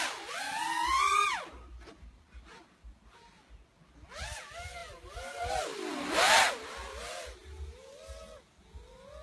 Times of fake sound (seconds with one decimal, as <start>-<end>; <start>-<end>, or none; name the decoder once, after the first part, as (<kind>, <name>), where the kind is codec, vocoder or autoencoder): 0.9-2.2 (vocoder, BigVGAN v2)